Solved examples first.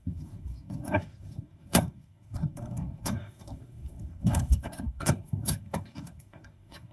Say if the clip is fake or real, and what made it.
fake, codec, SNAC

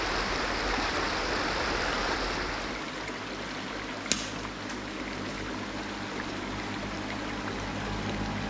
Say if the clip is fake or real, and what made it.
real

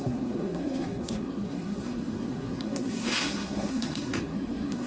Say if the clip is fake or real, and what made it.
fake, codec, SNAC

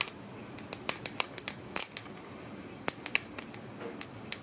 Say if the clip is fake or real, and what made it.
real